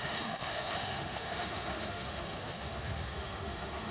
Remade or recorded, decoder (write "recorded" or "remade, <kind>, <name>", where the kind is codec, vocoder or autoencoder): remade, autoencoder, DAC-VAE